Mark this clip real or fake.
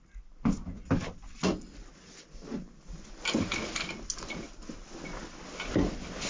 real